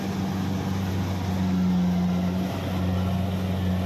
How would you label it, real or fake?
real